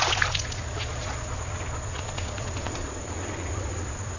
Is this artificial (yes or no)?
yes